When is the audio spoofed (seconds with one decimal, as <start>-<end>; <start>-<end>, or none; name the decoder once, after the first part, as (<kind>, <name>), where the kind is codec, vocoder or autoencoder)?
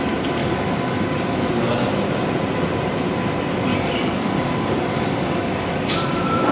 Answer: 0.4-1.5 (codec, DAC); 3.7-6.5